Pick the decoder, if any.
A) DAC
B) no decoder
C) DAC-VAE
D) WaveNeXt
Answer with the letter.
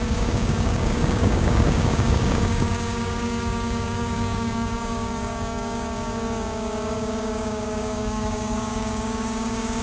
A